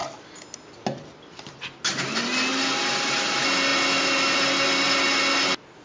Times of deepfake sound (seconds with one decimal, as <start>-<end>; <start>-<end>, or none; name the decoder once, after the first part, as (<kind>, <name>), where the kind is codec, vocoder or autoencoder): none